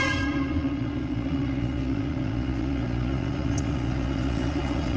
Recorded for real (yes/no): no